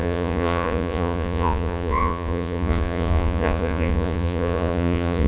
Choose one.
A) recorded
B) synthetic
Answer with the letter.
B